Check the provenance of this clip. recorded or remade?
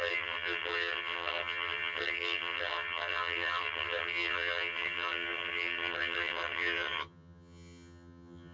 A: remade